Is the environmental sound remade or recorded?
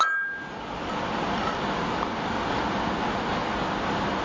recorded